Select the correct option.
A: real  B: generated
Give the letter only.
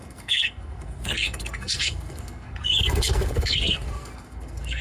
B